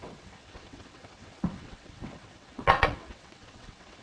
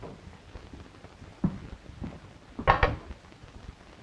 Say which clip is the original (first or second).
second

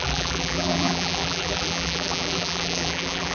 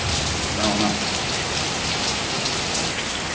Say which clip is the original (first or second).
second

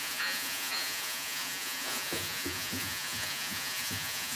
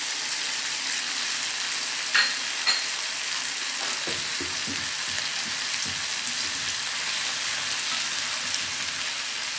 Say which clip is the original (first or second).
second